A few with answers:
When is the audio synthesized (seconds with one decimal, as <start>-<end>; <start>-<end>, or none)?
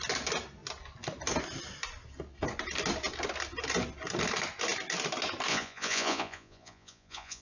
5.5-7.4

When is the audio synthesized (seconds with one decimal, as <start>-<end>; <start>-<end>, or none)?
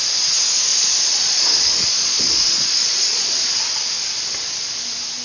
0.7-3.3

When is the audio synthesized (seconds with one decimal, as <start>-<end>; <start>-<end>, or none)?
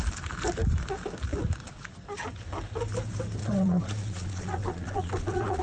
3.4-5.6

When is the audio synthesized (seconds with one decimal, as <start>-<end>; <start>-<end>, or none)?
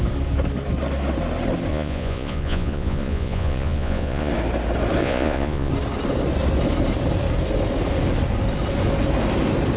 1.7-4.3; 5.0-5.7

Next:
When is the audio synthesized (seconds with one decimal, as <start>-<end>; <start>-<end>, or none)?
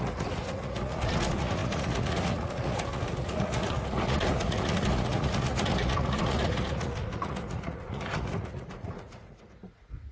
0.0-10.1